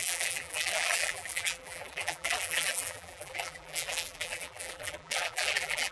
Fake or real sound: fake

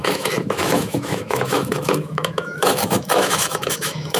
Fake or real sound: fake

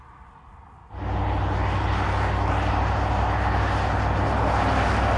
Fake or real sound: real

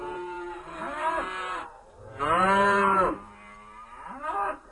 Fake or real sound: fake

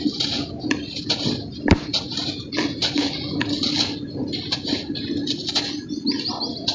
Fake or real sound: real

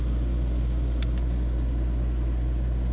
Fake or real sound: real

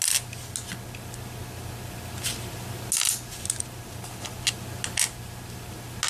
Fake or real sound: real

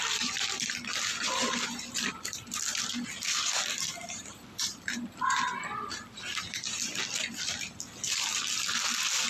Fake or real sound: fake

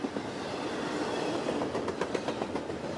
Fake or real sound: real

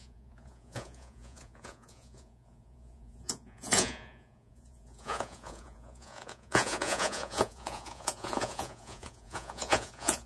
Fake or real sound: fake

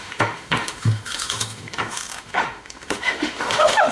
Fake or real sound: fake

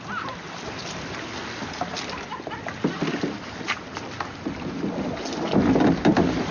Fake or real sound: real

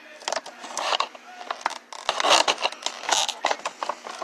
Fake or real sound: real